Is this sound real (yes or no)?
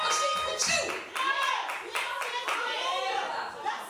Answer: yes